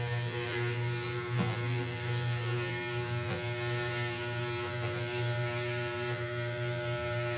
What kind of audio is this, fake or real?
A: fake